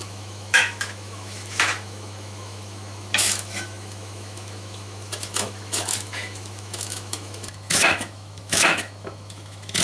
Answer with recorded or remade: remade